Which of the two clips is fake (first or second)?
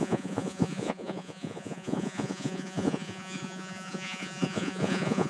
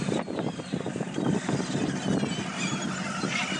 first